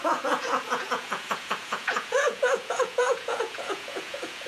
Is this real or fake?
fake